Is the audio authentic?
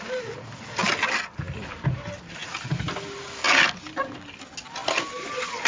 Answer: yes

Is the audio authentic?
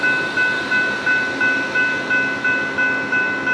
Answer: yes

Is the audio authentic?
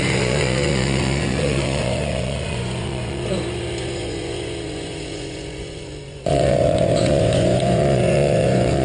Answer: no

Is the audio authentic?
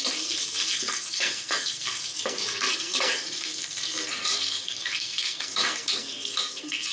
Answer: no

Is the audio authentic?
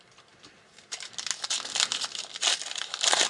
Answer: yes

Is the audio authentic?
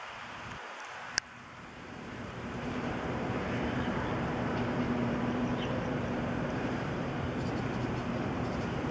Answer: no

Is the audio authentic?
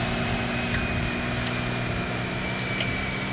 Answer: yes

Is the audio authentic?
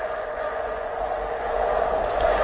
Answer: no